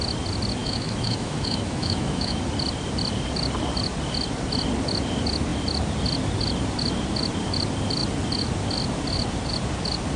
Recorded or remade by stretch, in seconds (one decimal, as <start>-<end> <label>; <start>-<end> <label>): 0.0-0.6 recorded; 0.6-2.4 remade; 2.4-10.2 recorded